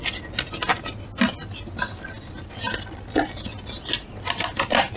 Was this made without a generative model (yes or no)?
yes